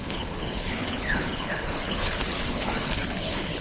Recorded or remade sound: remade